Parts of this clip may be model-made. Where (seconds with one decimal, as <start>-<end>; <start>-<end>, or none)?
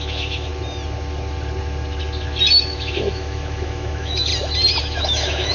0.0-0.5; 2.6-4.3; 4.8-5.5